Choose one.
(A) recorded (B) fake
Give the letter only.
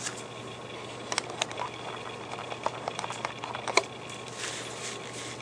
A